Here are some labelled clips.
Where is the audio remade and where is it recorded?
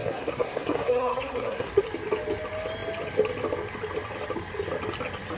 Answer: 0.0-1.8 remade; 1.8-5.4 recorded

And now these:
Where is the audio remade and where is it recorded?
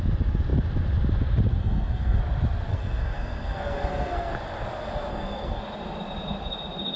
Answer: 0.0-1.6 recorded; 1.6-2.2 remade; 2.2-2.7 recorded; 2.7-4.3 remade; 4.3-5.1 recorded; 5.1-5.6 remade; 5.6-7.0 recorded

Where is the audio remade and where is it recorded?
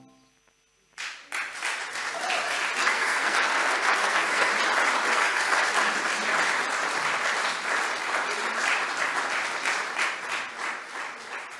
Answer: 0.0-2.8 recorded; 2.8-4.5 remade; 4.5-5.1 recorded; 5.1-5.7 remade; 5.7-11.6 recorded